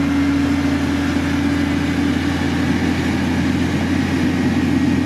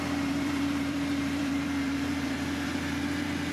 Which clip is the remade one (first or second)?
second